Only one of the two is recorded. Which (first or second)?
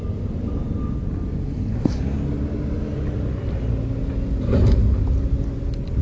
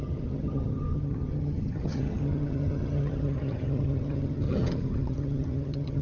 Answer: first